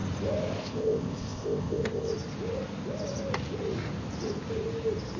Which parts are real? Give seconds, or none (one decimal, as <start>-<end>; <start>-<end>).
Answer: 0.0-0.6; 2.1-5.2